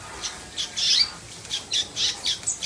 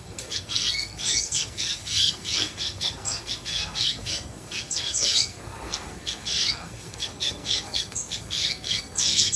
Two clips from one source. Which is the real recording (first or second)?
first